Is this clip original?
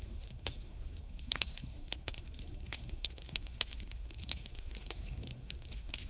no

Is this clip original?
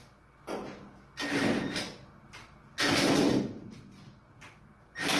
yes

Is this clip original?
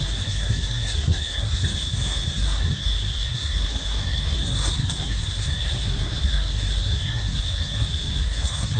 no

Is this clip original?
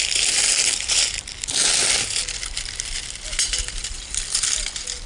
yes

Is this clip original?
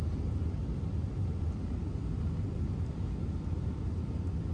yes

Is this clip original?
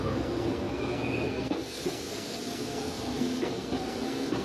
no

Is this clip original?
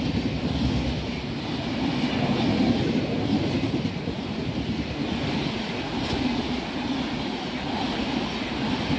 yes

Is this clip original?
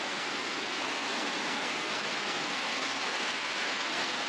no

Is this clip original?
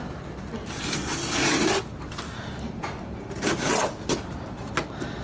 yes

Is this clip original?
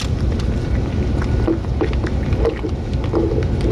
yes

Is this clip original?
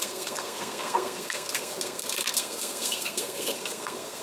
no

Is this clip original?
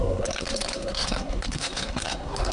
no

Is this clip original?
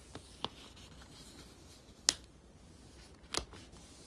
yes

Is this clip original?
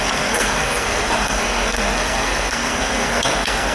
no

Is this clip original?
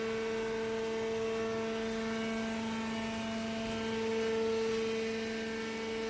yes